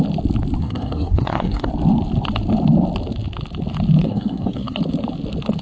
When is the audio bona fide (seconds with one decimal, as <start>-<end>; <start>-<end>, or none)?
0.0-0.6; 1.7-4.0; 4.8-5.6